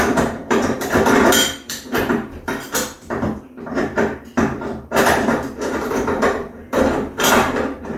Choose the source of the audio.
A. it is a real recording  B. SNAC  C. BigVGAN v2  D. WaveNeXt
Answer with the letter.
C